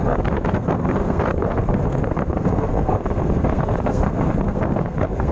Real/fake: fake